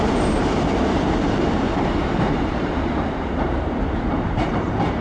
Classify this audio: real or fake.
fake